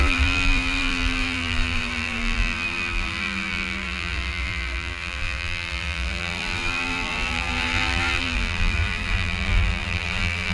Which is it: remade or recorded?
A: remade